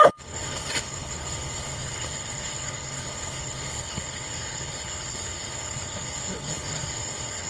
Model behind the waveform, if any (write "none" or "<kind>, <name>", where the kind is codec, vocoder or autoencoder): codec, HILCodec